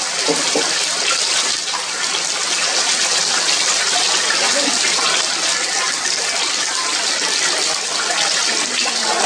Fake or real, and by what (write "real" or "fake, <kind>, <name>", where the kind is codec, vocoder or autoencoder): real